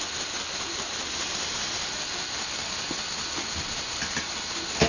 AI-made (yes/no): no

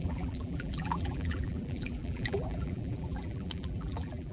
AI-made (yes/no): yes